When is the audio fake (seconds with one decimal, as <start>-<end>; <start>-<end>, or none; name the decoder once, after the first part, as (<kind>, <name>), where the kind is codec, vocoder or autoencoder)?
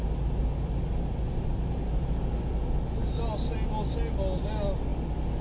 1.3-2.1 (vocoder, BigVGAN v2)